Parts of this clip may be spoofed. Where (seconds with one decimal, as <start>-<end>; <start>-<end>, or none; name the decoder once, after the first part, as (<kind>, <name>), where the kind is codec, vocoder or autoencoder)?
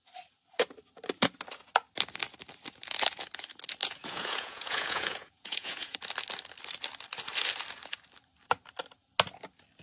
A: 3.8-6.0 (vocoder, Vocos)